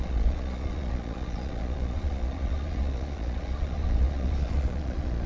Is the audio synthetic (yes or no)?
yes